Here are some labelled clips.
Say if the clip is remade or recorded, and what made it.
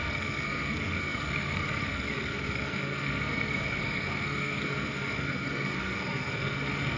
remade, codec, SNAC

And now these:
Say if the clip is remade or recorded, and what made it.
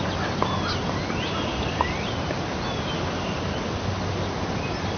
recorded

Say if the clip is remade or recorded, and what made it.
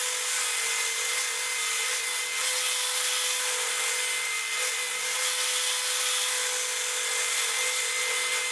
recorded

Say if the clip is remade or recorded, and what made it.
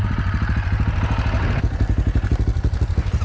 recorded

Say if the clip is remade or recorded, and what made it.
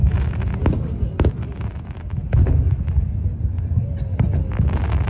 recorded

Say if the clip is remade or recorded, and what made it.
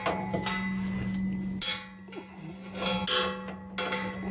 recorded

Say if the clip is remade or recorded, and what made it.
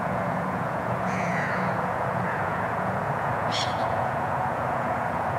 remade, vocoder, Vocos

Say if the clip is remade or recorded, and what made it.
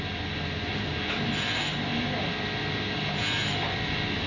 recorded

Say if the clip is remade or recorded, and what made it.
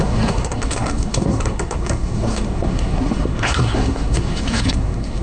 remade, codec, SNAC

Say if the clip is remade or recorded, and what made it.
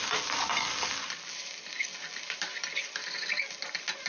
recorded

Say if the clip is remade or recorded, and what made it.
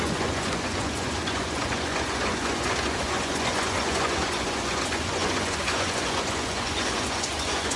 remade, vocoder, Vocos